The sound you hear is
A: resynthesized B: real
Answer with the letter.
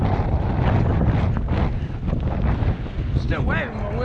B